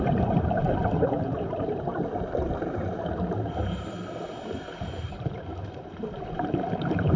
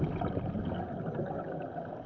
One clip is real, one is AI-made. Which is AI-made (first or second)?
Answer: first